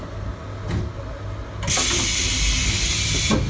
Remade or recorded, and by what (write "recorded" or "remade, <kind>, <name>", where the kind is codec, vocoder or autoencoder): recorded